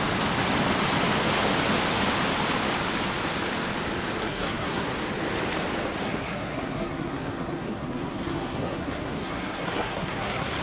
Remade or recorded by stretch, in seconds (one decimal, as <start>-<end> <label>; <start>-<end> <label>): 0.0-4.2 recorded; 4.2-4.9 remade; 4.9-6.0 recorded; 6.0-10.6 remade